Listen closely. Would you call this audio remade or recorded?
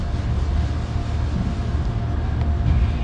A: recorded